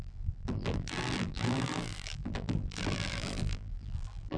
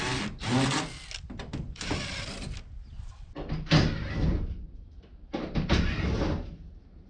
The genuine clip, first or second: second